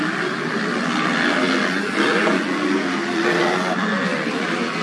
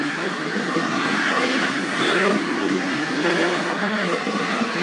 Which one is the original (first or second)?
first